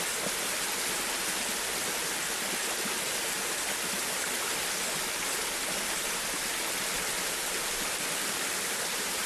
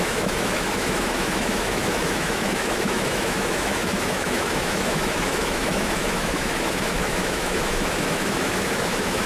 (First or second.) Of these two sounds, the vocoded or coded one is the second